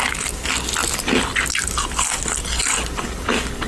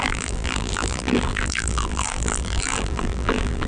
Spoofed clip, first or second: second